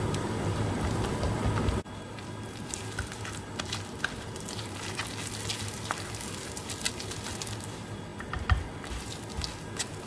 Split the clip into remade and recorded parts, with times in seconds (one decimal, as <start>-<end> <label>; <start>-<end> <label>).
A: 0.0-10.1 recorded